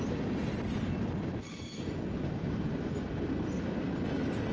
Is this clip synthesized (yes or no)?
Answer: no